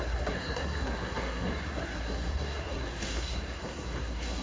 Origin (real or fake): fake